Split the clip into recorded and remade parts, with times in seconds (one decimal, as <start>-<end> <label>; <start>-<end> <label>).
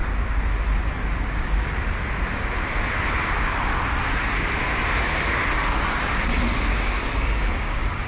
0.0-6.7 recorded; 6.7-8.1 remade